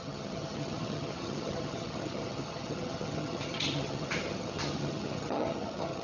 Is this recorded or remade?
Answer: remade